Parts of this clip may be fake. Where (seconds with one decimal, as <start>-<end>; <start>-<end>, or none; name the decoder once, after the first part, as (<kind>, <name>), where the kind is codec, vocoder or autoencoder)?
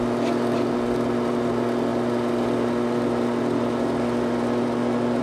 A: none